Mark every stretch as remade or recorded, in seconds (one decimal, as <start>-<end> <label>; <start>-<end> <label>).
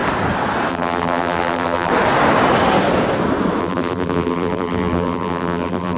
0.0-0.7 recorded; 0.7-1.9 remade; 1.9-3.6 recorded; 3.6-6.0 remade